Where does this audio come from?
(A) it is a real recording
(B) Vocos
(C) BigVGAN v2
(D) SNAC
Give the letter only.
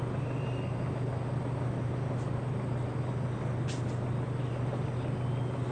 A